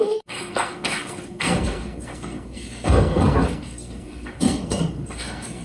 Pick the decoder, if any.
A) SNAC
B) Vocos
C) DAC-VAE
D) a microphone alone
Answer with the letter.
A